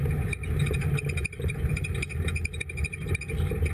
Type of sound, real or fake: real